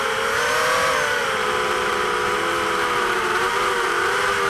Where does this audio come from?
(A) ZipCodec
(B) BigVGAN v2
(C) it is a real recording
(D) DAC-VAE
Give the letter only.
B